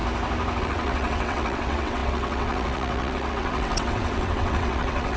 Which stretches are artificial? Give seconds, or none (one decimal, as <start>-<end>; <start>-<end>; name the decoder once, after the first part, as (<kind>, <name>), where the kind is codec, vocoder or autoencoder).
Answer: 0.6-5.2 (vocoder, WaveNeXt)